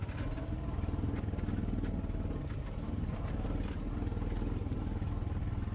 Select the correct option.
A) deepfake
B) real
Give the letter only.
B